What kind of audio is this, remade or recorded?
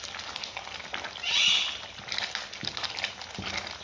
recorded